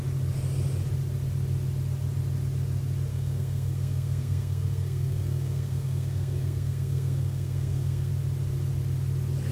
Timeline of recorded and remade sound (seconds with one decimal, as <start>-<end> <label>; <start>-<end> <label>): 0.0-3.1 recorded; 3.1-8.1 remade; 8.1-9.5 recorded